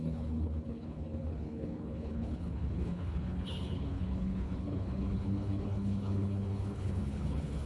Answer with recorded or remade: remade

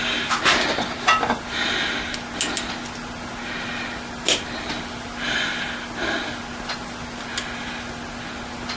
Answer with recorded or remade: recorded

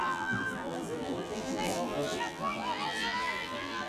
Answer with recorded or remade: remade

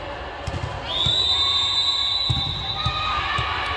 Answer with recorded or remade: recorded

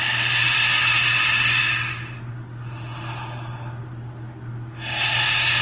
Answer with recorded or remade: recorded